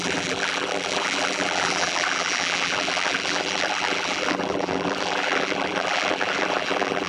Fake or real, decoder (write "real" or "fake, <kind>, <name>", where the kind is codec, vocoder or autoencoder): fake, vocoder, BigVGAN v2